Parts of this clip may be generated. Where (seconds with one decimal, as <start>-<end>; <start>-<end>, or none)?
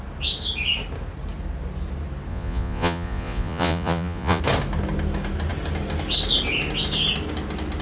2.3-4.4